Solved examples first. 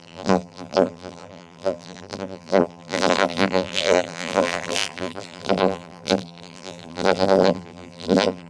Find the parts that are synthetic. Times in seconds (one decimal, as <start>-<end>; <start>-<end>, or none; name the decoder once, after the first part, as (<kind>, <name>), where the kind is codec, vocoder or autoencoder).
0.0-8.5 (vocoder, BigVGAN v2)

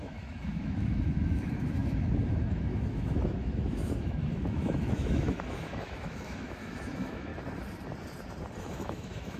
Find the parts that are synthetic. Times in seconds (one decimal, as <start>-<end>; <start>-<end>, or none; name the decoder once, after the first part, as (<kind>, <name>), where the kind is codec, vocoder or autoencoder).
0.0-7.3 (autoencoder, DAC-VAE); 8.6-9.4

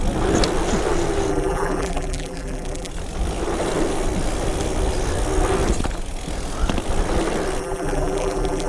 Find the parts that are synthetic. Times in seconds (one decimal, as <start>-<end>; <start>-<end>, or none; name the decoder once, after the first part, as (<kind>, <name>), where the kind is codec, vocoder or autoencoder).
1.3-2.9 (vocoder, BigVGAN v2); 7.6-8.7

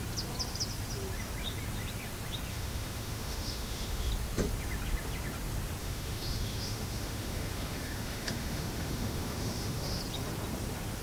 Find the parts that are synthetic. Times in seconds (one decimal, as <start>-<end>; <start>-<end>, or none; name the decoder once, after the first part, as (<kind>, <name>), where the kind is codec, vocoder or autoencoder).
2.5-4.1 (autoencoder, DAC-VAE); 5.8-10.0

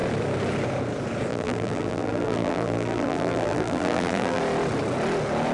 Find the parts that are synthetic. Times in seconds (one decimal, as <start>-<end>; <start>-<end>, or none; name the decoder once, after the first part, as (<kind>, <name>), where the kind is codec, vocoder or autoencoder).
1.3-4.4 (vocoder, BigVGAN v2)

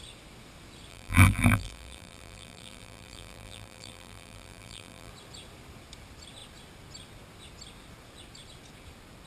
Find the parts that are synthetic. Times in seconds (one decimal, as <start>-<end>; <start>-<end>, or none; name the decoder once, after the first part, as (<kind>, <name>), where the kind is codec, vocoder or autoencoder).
0.9-5.1 (vocoder, BigVGAN v2)